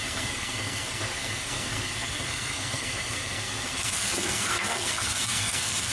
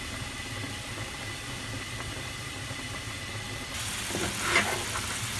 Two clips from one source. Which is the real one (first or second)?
second